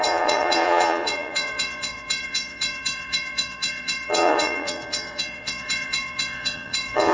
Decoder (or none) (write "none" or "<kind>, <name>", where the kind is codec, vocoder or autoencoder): vocoder, Vocos